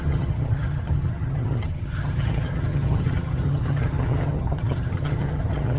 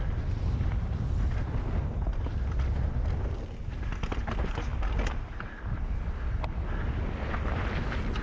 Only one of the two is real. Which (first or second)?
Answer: second